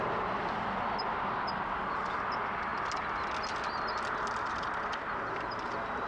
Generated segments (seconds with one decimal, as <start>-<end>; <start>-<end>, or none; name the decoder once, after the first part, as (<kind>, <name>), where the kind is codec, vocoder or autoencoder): none